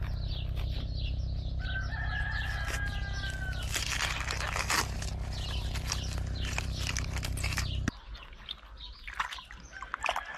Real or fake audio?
real